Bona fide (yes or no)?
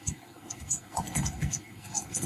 no